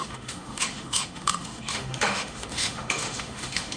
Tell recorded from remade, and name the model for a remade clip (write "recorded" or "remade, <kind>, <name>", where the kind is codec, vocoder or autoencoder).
remade, autoencoder, DAC-VAE